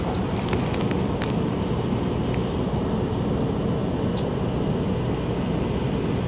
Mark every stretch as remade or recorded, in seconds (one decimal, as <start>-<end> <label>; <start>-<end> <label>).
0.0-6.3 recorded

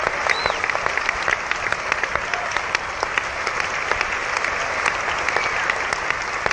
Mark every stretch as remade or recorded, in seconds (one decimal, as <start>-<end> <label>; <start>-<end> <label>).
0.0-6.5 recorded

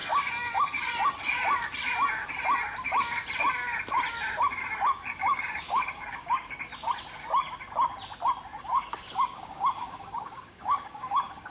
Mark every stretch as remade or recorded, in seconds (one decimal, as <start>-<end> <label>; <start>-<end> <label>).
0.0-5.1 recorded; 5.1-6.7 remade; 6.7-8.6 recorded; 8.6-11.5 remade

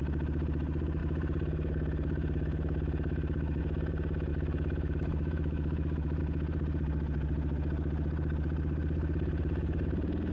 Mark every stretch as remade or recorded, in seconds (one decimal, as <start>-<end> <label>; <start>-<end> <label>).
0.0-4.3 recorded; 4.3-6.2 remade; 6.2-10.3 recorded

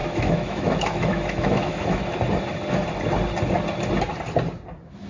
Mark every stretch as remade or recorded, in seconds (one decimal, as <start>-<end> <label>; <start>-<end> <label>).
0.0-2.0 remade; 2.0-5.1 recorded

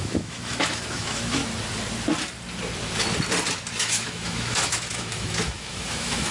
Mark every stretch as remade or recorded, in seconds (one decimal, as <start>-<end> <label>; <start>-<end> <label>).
0.0-1.4 remade; 1.4-3.8 recorded; 3.8-6.3 remade

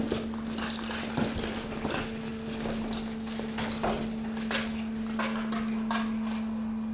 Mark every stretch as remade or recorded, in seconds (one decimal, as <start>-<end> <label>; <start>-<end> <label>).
0.0-6.9 recorded